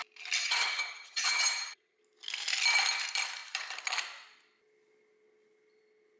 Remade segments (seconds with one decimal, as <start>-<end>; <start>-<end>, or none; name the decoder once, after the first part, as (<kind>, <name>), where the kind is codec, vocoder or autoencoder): 0.4-2.0 (vocoder, HiFi-GAN)